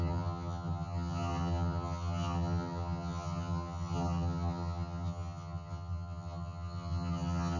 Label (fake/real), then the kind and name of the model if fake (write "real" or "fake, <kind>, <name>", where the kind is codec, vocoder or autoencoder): fake, vocoder, HiFi-GAN